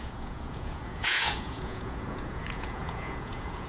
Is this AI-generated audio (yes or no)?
yes